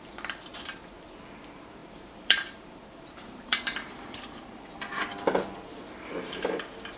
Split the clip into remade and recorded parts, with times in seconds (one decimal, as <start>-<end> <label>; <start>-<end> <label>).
0.0-1.8 recorded; 1.8-5.8 remade; 5.8-7.0 recorded